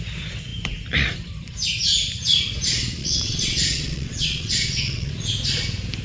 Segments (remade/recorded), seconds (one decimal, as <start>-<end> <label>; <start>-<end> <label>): 0.0-3.0 recorded; 3.0-5.1 remade; 5.1-6.0 recorded